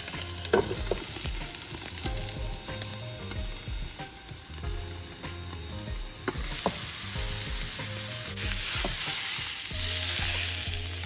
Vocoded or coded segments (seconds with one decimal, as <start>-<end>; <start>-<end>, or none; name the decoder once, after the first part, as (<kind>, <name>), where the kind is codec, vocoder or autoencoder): none